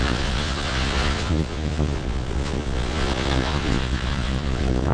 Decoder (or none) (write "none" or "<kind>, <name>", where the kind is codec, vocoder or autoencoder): vocoder, Vocos